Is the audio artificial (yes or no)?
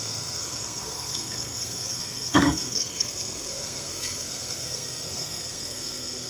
yes